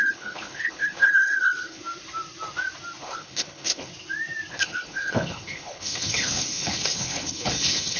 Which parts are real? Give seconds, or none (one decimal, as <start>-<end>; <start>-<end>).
1.8-3.0; 3.9-4.5